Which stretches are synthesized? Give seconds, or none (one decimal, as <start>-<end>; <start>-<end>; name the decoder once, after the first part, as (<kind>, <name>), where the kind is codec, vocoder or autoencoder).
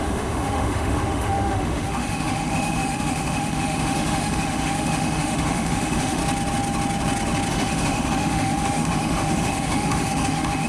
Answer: 0.0-6.2 (autoencoder, DAC-VAE); 7.5-10.7